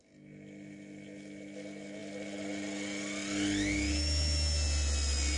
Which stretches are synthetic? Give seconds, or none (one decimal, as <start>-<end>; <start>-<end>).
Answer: none